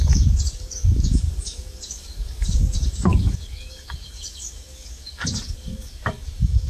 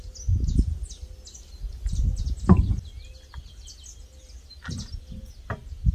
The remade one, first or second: first